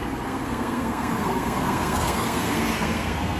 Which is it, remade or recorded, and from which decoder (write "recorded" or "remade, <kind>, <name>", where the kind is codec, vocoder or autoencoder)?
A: remade, codec, SNAC